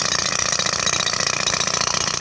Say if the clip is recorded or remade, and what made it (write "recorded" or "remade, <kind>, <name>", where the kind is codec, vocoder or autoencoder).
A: recorded